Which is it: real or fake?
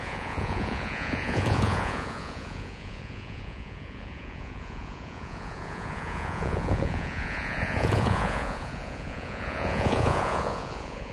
fake